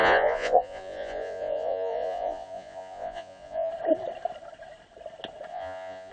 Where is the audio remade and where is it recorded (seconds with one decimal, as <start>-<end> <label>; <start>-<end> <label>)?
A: 0.0-3.7 remade; 3.7-5.5 recorded; 5.5-6.1 remade